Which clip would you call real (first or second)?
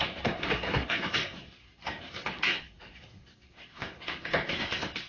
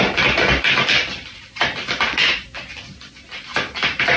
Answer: second